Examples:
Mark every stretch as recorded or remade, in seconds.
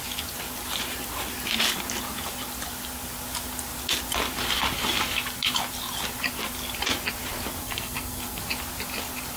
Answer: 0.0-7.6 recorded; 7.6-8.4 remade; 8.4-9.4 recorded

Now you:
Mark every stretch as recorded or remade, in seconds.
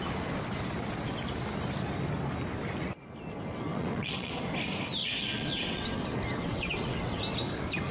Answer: 0.0-3.5 recorded; 3.5-4.3 remade; 4.3-5.0 recorded; 5.0-6.0 remade; 6.0-6.4 recorded; 6.4-7.2 remade; 7.2-7.9 recorded